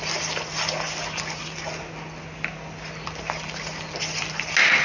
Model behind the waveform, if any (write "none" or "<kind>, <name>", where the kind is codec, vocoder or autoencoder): none